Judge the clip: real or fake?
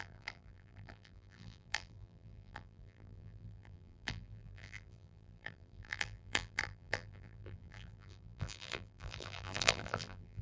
fake